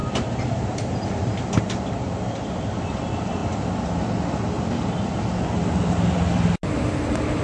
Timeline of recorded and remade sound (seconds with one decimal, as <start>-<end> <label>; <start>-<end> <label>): 0.0-7.4 recorded